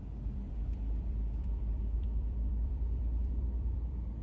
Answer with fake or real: fake